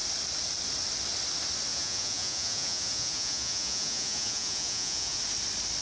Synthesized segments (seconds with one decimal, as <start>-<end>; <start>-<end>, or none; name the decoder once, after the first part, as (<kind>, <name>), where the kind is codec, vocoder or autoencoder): 1.7-5.2 (vocoder, Vocos)

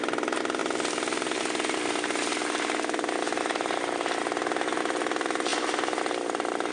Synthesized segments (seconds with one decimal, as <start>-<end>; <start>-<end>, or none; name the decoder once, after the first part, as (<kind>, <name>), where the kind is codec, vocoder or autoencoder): none

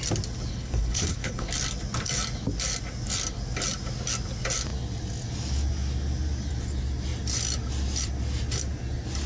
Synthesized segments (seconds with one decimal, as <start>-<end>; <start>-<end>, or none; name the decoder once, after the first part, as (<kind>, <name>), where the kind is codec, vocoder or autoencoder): 0.5-1.5 (codec, HILCodec)

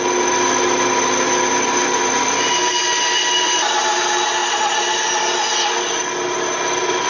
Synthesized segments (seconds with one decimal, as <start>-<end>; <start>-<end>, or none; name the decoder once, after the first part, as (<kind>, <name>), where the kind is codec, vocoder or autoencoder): none

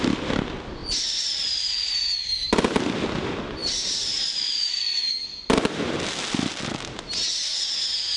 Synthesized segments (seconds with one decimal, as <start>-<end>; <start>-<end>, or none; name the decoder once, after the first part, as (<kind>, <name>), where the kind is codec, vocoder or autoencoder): 3.6-5.4 (vocoder, BigVGAN v2)

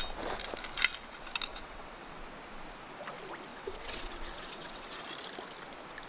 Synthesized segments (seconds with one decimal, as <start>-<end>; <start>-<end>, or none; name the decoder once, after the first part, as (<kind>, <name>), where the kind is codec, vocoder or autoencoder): 1.5-2.2 (vocoder, WaveNeXt); 3.5-5.0